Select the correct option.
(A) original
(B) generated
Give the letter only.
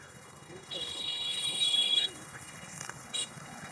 B